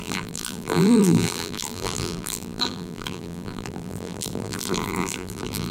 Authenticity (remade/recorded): remade